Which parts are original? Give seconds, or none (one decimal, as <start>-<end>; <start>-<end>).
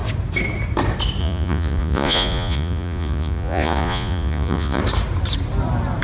0.0-1.2; 4.8-6.0